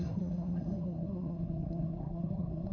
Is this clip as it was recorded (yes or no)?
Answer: no